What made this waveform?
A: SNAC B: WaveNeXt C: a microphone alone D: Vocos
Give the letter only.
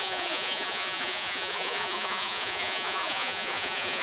D